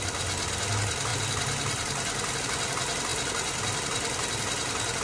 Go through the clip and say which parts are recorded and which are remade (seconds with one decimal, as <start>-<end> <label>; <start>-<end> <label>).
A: 0.0-5.0 recorded